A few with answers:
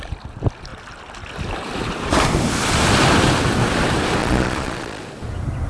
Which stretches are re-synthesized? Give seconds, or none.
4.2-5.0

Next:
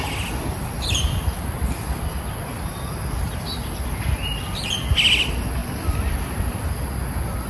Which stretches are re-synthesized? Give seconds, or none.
none

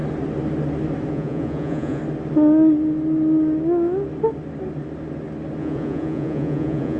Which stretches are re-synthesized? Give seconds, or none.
1.1-2.0; 5.6-7.0

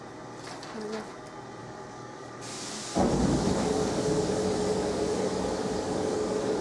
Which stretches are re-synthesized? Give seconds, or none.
1.6-2.4; 3.0-6.6

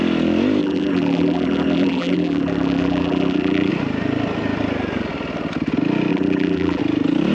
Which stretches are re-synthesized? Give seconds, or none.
0.6-3.7; 6.1-6.8

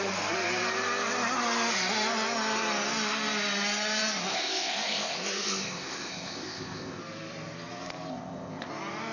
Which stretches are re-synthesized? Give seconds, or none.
4.3-7.0; 8.1-8.7